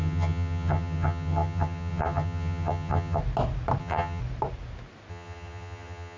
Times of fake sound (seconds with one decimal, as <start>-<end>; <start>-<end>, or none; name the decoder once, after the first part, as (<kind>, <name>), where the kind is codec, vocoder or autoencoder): 0.0-3.2 (vocoder, HiFi-GAN); 3.8-4.2; 5.1-6.2